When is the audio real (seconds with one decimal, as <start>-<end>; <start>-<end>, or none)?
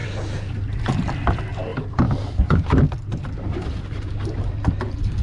none